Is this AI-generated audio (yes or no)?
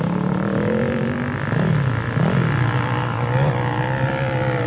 no